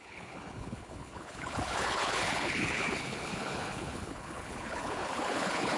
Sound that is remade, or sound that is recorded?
remade